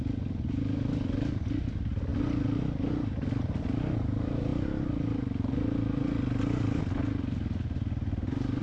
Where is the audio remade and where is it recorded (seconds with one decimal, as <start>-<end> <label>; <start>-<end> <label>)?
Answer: 0.0-8.6 recorded